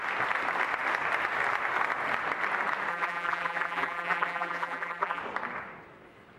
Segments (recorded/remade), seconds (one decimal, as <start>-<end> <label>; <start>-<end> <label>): 0.0-2.9 recorded; 2.9-5.2 remade; 5.2-6.4 recorded